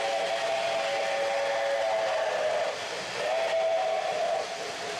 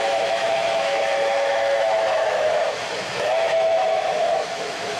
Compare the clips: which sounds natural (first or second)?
first